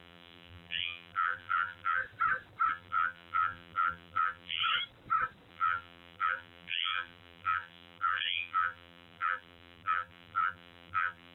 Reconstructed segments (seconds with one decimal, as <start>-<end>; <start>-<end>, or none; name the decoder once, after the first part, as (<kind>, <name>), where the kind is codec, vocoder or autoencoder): 0.0-2.0 (vocoder, BigVGAN v2); 2.7-4.6; 5.5-11.3